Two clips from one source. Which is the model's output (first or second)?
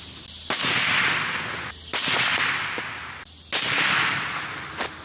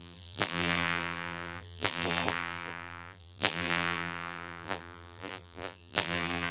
second